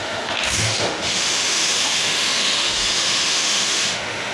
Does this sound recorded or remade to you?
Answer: remade